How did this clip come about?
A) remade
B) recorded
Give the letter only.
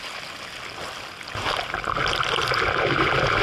B